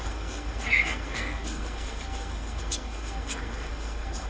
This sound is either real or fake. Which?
fake